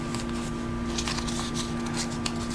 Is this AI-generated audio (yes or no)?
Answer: no